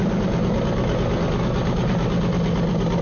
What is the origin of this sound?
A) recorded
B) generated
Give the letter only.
A